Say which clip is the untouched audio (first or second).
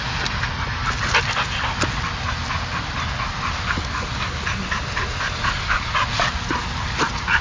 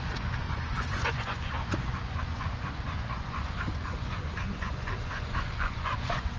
first